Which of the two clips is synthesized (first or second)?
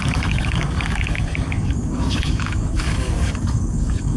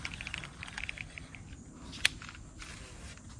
first